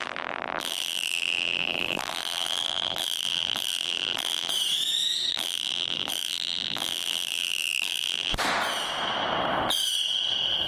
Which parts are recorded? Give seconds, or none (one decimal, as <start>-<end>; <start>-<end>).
4.5-5.3; 8.3-10.7